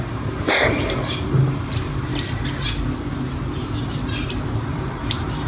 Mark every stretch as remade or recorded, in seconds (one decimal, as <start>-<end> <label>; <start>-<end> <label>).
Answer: 0.0-2.1 remade; 2.1-4.7 recorded; 4.7-5.5 remade